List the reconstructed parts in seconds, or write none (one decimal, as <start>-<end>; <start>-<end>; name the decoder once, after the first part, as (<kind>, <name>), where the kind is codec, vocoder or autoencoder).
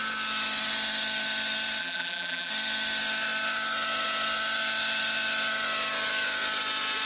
1.8-2.5 (vocoder, BigVGAN v2)